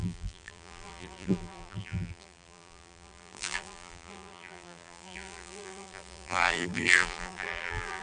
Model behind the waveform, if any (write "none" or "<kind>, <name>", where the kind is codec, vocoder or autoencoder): vocoder, BigVGAN v2